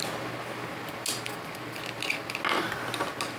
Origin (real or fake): real